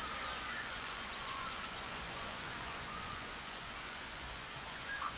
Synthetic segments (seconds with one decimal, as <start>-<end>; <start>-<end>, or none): 0.0-5.2